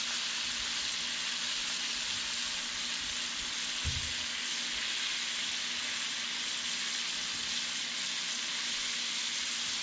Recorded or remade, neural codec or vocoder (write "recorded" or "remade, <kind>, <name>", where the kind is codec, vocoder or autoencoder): recorded